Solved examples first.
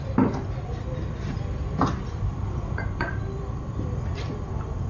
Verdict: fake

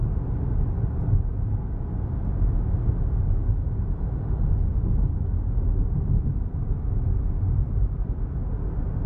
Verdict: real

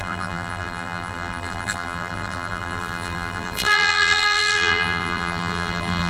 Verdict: fake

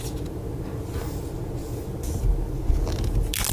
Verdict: real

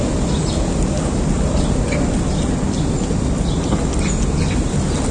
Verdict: real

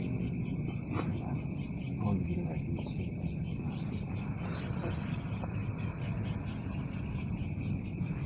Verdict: real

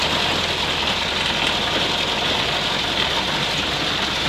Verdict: real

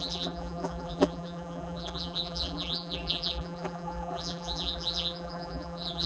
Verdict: fake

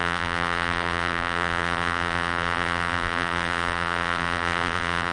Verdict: fake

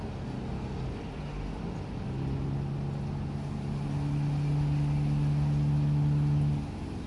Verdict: real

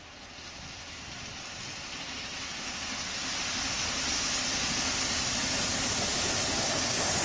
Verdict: real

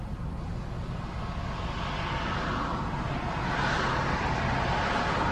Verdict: real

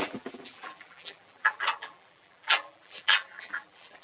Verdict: fake